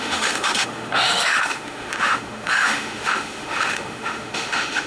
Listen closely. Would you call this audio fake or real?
fake